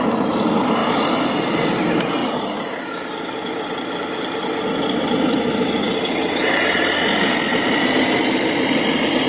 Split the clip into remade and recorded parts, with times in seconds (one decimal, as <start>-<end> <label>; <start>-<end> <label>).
0.0-9.3 recorded